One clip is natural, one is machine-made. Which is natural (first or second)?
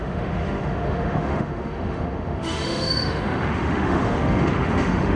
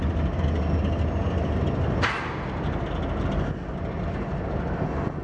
second